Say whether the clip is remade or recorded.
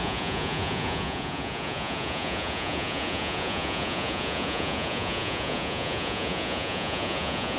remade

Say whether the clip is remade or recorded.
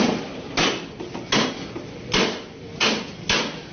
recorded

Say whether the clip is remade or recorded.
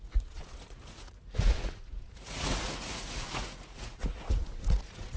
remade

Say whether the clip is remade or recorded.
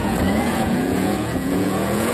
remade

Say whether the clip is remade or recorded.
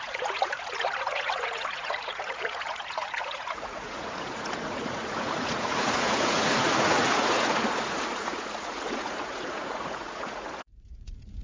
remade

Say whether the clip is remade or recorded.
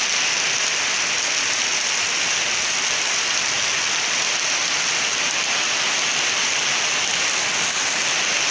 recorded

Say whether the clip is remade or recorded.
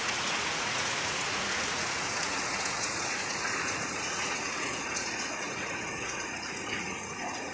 remade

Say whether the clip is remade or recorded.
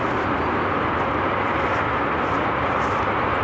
recorded